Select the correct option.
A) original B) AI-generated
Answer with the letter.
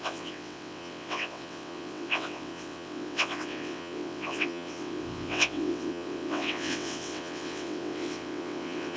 B